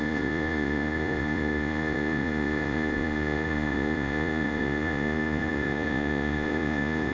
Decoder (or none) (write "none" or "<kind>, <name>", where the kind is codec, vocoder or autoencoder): vocoder, Vocos